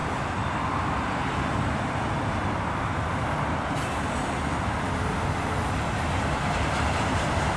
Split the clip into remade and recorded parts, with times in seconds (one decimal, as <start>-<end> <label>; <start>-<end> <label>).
0.0-7.6 recorded